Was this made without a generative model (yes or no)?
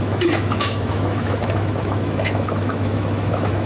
no